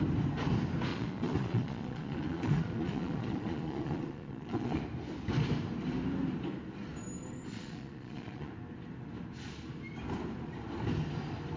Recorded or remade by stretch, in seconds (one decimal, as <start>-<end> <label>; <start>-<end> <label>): 0.0-0.9 recorded; 0.9-4.8 remade; 4.8-7.5 recorded; 7.5-8.5 remade; 8.5-11.6 recorded